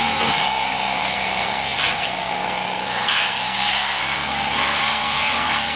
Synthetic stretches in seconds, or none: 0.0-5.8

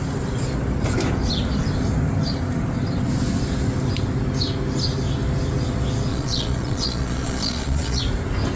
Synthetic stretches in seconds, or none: 6.1-8.0

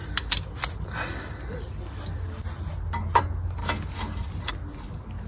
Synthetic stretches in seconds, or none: none

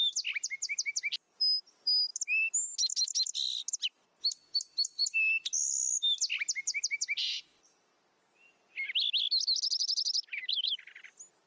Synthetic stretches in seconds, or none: none

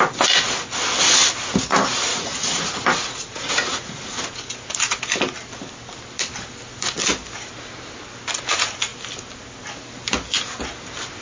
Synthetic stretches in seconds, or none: 2.1-4.2